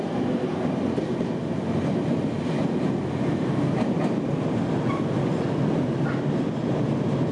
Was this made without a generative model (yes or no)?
yes